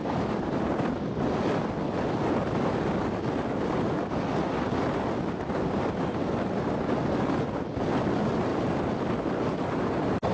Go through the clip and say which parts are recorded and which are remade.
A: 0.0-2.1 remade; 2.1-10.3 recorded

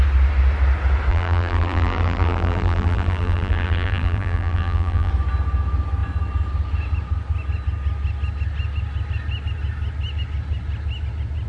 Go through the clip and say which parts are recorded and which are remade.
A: 0.0-1.1 recorded; 1.1-5.1 remade; 5.1-11.5 recorded